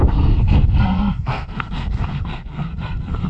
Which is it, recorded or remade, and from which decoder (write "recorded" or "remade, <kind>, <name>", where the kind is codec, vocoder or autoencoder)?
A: remade, codec, SNAC